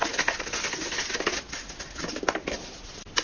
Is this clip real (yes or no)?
yes